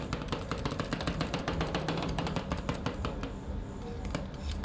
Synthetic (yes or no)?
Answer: no